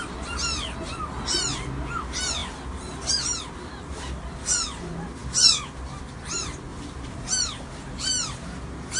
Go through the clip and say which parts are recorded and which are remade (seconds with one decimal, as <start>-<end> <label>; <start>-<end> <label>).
0.0-6.7 recorded; 6.7-7.4 remade; 7.4-9.0 recorded

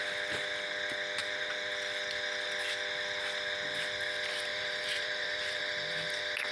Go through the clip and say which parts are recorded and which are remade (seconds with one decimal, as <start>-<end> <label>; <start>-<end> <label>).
0.0-1.2 recorded; 1.2-1.7 remade; 1.7-4.5 recorded; 4.5-5.6 remade; 5.6-6.5 recorded

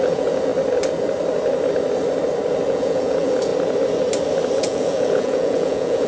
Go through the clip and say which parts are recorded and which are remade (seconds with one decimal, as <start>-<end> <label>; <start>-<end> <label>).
0.0-0.5 remade; 0.5-2.7 recorded; 2.7-3.5 remade; 3.5-4.6 recorded; 4.6-6.1 remade

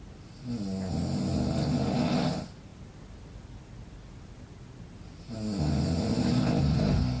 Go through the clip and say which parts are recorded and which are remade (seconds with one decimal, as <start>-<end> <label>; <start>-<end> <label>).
0.0-7.2 recorded